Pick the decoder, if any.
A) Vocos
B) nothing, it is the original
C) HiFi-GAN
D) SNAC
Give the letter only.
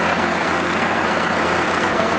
D